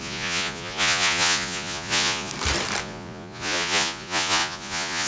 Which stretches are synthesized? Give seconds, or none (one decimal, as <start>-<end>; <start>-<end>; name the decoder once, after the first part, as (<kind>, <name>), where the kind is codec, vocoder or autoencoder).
0.0-2.3 (vocoder, Vocos); 2.8-5.1